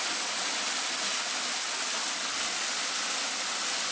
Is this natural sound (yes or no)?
yes